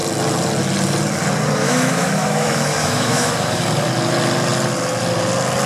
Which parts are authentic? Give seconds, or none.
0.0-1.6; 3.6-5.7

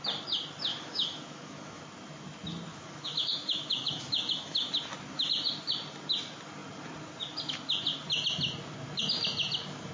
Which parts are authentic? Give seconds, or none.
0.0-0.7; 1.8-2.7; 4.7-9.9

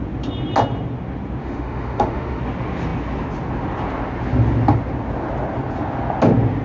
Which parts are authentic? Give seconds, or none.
0.0-1.4; 2.4-6.6